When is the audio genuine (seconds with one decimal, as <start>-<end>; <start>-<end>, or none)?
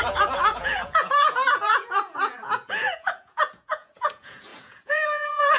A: none